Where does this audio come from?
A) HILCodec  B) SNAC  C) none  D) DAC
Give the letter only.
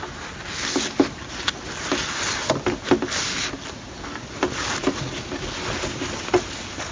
C